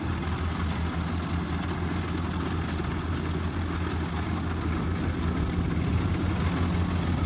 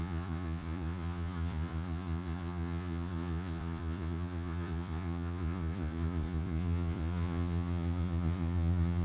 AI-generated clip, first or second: second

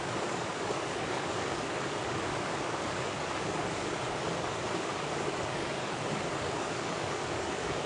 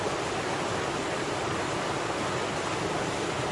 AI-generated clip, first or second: first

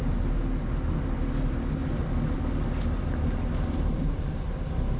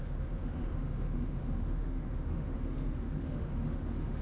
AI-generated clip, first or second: second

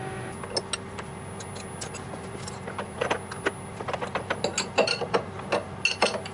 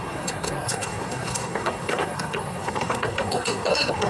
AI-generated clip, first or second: second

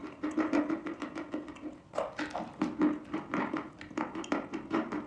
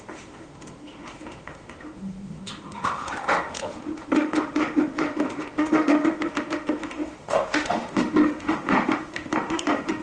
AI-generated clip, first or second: second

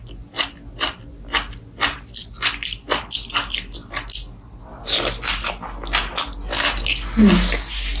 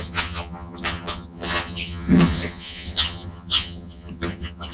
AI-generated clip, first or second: second